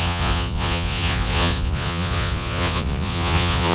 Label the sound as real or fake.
fake